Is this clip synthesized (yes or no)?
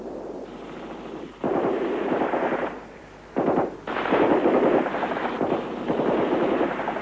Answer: yes